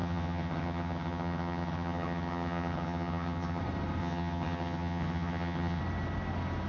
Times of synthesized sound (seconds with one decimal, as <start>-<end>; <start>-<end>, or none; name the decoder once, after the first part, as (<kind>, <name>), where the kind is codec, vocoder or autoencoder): 0.0-3.6 (vocoder, HiFi-GAN); 4.0-5.8